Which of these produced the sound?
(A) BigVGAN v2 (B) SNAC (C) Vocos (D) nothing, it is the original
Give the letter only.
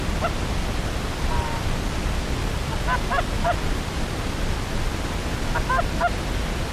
D